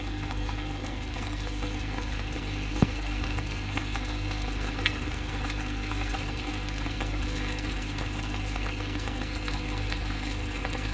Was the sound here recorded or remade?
remade